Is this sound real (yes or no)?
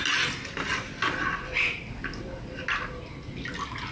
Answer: yes